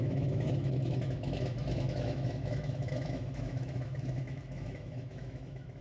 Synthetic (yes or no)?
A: yes